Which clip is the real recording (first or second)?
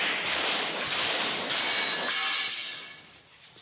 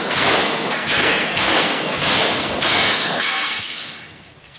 first